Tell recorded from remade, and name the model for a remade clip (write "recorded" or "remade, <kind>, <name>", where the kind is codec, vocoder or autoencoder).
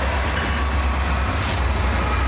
recorded